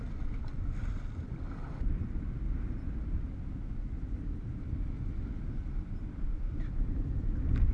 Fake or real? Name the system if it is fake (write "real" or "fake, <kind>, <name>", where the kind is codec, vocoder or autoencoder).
real